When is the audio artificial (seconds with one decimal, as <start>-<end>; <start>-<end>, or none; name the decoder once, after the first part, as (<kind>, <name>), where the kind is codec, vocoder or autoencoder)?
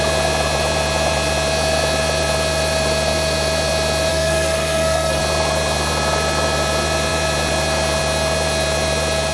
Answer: 4.1-5.2 (codec, SNAC)